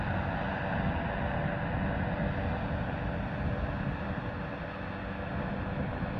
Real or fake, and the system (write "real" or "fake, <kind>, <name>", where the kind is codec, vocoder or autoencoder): real